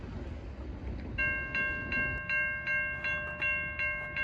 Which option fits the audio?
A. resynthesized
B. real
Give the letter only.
B